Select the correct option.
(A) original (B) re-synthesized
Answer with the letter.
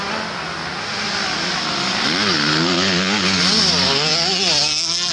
A